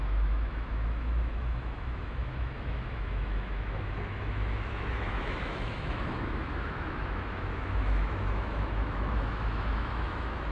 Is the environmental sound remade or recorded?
remade